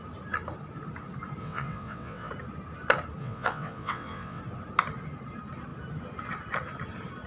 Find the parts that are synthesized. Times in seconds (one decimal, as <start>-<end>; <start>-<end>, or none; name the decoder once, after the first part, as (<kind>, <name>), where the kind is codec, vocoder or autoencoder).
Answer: 1.4-2.3 (vocoder, WaveNeXt); 3.2-4.4